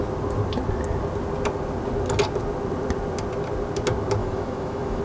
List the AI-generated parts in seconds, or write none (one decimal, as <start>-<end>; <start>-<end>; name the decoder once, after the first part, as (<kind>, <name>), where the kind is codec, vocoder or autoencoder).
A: 4.2-5.0 (autoencoder, DAC-VAE)